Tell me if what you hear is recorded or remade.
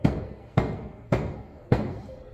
remade